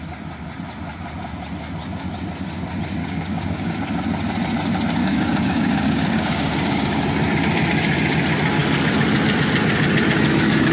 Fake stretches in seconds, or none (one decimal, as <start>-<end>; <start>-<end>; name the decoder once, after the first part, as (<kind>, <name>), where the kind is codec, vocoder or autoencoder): 3.0-3.8 (codec, DAC); 5.0-7.0